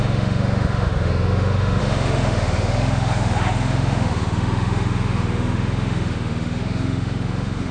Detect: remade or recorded remade